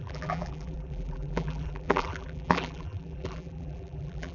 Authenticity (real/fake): fake